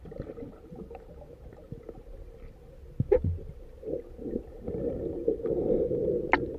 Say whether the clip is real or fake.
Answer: real